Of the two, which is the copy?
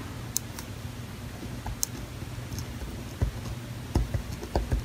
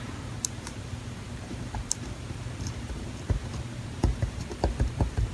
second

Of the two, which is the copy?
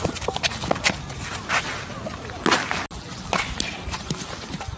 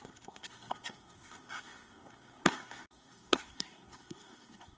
second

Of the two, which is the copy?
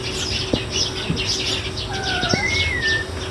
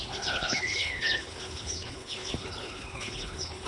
second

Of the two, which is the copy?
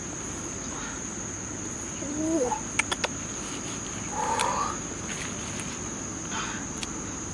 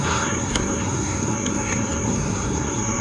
second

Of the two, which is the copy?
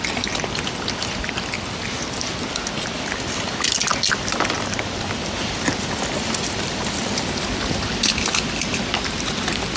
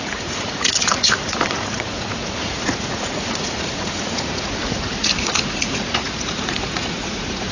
second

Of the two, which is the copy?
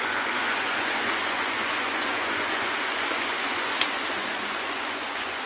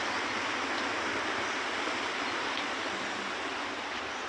first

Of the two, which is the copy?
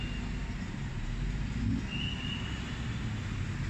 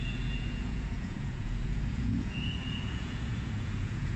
second